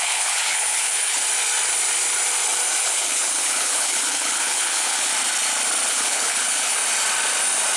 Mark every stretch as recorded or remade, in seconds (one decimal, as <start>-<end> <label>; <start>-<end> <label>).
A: 0.0-1.2 remade; 1.2-2.8 recorded; 2.8-5.1 remade; 5.1-5.9 recorded; 5.9-6.8 remade; 6.8-7.8 recorded